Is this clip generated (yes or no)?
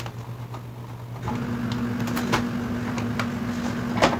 no